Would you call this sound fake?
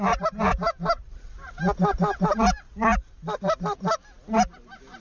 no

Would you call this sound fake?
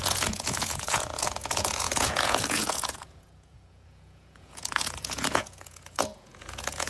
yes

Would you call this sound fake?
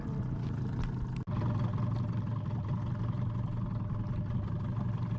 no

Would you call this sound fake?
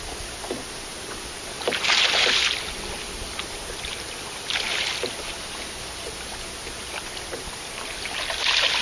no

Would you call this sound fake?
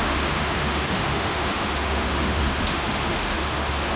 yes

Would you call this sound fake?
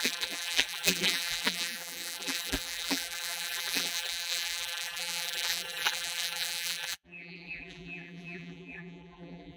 yes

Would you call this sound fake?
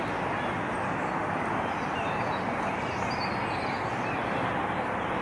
no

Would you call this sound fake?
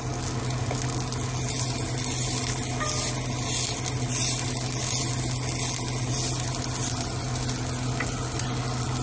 no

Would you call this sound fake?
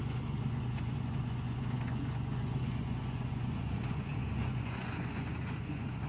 yes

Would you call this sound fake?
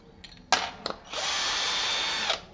no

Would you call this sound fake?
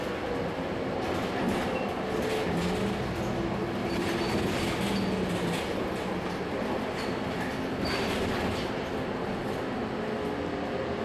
no